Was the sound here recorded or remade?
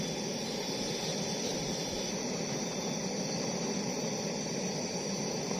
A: recorded